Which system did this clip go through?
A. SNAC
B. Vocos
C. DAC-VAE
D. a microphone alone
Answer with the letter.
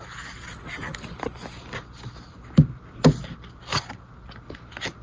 D